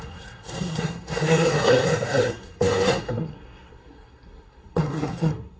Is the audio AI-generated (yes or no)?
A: yes